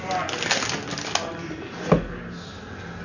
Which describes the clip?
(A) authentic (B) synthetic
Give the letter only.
A